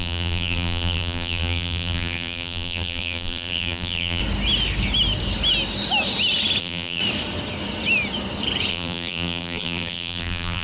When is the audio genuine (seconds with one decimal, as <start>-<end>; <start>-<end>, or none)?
4.2-6.6; 7.0-8.7